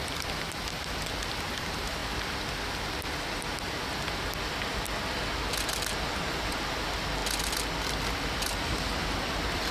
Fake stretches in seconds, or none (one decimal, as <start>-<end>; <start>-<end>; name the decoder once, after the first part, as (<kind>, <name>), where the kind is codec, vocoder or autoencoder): 1.5-2.0 (vocoder, BigVGAN v2); 6.3-7.2; 8.1-9.7